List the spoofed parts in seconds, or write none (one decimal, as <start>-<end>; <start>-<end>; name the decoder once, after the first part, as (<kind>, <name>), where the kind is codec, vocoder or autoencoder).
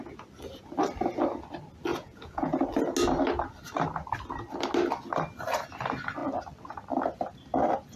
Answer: 1.9-2.6 (vocoder, Vocos)